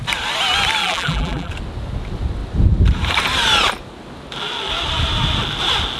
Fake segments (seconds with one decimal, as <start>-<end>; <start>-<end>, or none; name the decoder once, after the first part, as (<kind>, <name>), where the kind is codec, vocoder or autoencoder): 0.8-1.5 (vocoder, BigVGAN v2)